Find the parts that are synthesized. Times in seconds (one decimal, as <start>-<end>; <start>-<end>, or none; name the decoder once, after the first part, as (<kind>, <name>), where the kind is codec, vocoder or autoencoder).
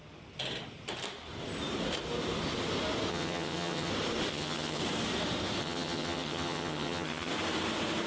3.1-3.9 (vocoder, HiFi-GAN); 4.3-4.8; 5.6-7.3